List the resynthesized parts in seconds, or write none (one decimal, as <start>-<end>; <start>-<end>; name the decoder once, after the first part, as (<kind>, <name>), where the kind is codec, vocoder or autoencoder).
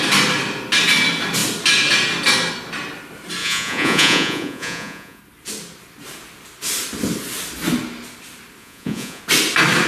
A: 3.4-5.2 (vocoder, Vocos); 8.6-9.2